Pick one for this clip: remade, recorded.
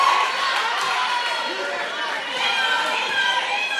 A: remade